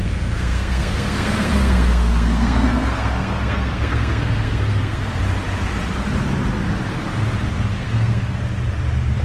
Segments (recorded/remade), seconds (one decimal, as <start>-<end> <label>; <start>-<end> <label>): 0.0-5.2 remade; 5.2-7.7 recorded; 7.7-8.4 remade; 8.4-9.2 recorded